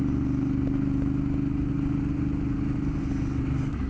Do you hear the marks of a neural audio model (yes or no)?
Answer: no